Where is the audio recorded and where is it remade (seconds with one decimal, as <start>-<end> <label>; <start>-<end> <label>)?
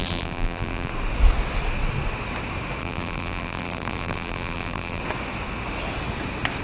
0.0-0.9 remade; 0.9-2.8 recorded; 2.8-5.0 remade; 5.0-6.6 recorded